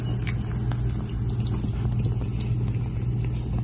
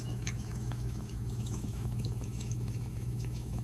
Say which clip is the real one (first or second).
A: first